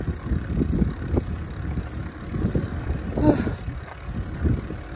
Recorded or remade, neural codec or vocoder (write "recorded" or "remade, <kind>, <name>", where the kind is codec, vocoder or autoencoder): recorded